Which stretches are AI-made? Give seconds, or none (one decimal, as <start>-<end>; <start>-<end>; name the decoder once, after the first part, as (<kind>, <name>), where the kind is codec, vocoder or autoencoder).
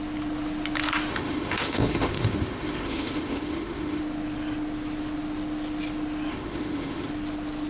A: 1.1-4.0 (autoencoder, DAC-VAE); 6.3-7.1